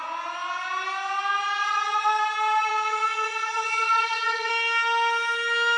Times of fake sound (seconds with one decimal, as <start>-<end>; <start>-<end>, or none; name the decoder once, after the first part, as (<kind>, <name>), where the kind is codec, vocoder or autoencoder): 1.6-2.2 (vocoder, Vocos); 2.7-4.5